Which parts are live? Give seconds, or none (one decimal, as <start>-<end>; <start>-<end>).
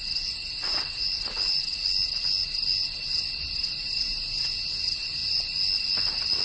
0.0-6.4